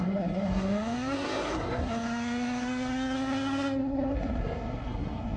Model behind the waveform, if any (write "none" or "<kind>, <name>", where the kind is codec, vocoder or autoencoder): codec, SNAC